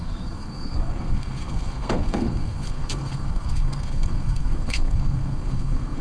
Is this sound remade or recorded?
remade